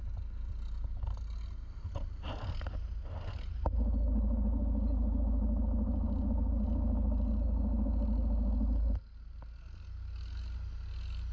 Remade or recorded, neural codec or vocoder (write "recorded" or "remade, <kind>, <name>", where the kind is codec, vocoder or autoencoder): recorded